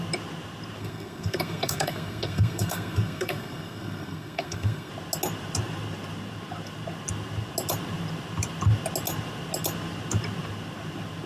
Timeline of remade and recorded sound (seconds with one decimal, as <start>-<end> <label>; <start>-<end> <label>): 0.0-0.8 recorded; 0.8-4.9 remade; 4.9-11.3 recorded